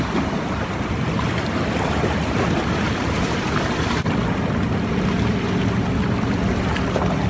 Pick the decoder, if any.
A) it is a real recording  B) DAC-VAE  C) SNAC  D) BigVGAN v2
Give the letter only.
D